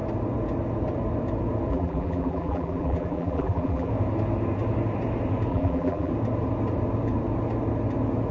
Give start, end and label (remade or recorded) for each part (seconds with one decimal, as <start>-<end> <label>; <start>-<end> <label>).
0.0-1.7 recorded; 1.7-3.9 remade; 3.9-5.5 recorded; 5.5-6.1 remade; 6.1-8.3 recorded